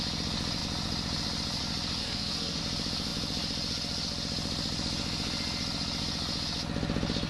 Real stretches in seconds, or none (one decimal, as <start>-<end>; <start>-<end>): 0.0-2.0; 2.6-7.3